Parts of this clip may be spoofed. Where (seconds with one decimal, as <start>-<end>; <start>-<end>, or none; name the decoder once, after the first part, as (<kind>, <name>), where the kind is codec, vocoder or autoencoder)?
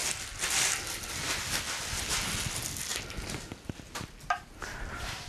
none